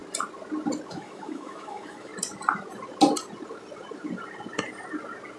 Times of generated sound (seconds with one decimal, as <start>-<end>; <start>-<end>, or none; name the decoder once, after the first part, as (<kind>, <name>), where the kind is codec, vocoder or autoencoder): 0.9-2.1 (autoencoder, DAC-VAE)